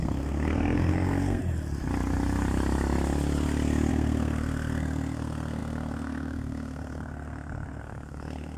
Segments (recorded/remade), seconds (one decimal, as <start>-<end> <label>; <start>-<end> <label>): 0.0-1.4 remade; 1.4-3.9 recorded; 3.9-8.6 remade

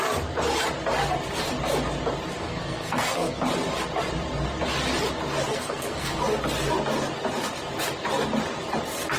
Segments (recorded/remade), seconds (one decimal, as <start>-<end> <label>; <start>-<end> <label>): 0.0-2.4 recorded; 2.4-3.4 remade; 3.4-5.5 recorded; 5.5-6.2 remade; 6.2-9.2 recorded

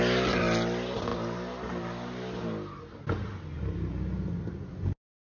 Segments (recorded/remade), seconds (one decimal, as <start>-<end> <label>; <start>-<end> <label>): 0.0-5.4 recorded

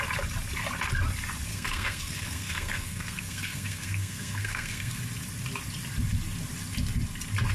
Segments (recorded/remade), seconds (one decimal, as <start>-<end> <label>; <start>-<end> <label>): 0.0-1.5 recorded; 1.5-5.0 remade; 5.0-7.5 recorded

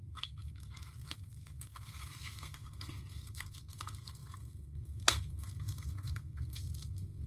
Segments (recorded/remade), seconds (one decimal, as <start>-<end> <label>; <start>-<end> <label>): 0.0-7.3 remade